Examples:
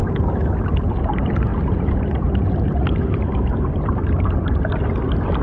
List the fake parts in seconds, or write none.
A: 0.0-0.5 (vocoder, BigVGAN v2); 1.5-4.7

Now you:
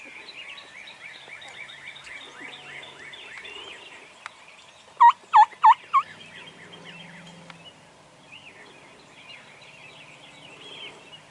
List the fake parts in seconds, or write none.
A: none